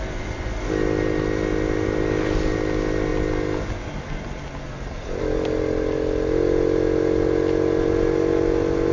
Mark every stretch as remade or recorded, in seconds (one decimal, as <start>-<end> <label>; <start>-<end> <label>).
0.0-8.9 recorded